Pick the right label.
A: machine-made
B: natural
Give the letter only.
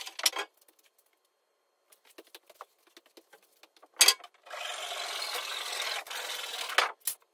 B